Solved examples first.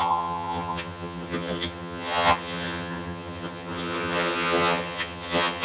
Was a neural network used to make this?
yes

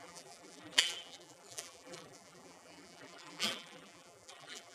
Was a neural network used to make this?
yes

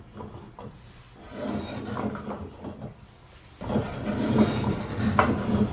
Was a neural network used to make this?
no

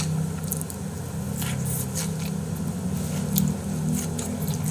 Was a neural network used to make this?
no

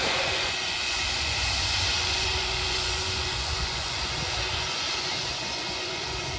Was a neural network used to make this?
yes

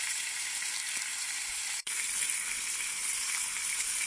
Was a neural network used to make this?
yes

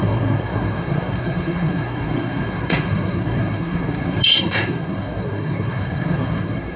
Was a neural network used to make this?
yes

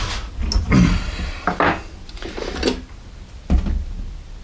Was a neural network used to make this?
no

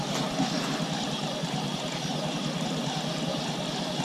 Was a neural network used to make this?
no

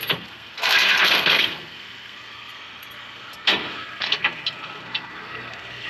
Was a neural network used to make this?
yes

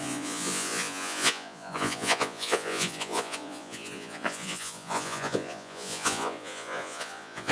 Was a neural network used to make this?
yes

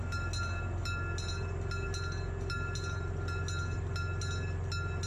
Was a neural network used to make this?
no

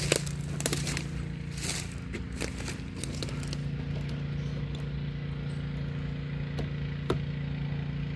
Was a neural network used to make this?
no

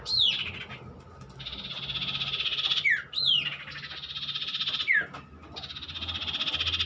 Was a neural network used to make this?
no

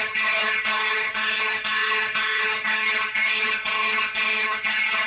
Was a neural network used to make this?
yes